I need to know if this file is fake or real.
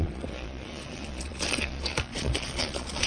fake